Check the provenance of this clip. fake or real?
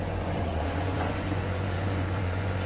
fake